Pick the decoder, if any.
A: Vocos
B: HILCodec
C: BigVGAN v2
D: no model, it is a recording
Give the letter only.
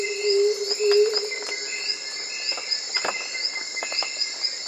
D